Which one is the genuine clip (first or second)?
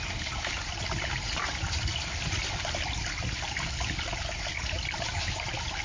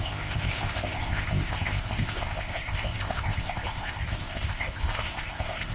first